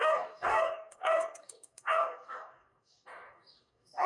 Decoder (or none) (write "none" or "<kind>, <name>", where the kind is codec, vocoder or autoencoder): codec, DAC